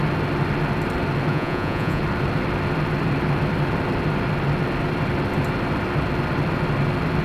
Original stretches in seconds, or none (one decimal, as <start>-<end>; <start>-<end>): 0.0-1.3; 2.0-7.2